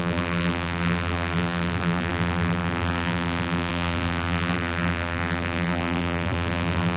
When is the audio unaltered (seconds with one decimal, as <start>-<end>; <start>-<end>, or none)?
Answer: none